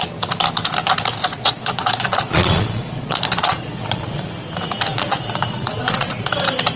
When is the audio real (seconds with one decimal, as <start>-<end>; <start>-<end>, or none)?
0.0-1.4; 4.2-4.9; 6.3-6.8